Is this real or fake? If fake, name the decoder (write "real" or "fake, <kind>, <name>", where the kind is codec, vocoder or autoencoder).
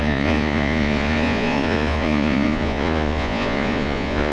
fake, vocoder, Vocos